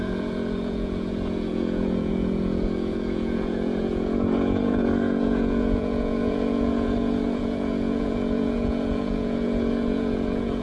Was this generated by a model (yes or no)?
yes